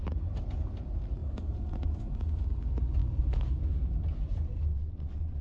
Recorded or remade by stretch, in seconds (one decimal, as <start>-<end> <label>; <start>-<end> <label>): 0.0-4.7 recorded; 4.7-5.4 remade